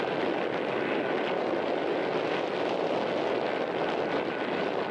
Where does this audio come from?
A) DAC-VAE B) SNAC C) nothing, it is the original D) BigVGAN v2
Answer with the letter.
C